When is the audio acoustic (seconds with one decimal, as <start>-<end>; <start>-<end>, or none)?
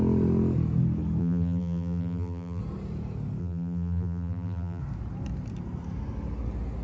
0.0-1.2; 2.6-3.4; 4.8-6.8